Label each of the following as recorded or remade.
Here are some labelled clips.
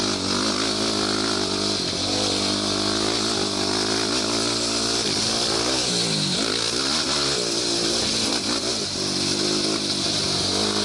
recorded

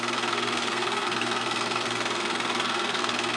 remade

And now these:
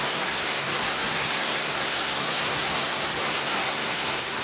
remade